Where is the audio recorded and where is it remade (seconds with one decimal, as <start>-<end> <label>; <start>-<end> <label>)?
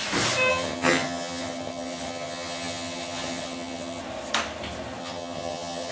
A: 0.0-0.5 recorded; 0.5-4.0 remade; 4.0-5.0 recorded; 5.0-5.9 remade